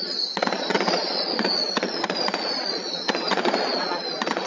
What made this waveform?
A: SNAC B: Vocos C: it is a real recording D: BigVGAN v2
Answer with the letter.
B